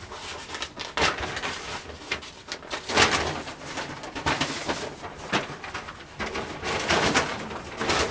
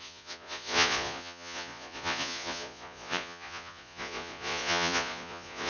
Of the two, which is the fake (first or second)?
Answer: second